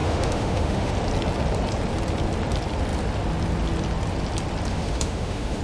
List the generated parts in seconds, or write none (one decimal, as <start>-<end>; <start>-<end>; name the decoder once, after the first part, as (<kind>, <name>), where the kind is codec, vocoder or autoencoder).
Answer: 0.0-0.9 (autoencoder, DAC-VAE); 4.7-5.6